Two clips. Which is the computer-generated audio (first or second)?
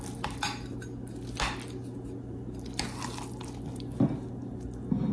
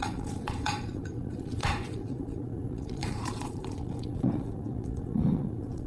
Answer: second